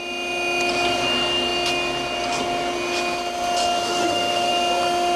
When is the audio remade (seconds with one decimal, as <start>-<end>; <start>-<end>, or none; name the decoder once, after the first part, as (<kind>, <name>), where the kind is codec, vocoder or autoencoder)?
3.8-4.5 (autoencoder, DAC-VAE)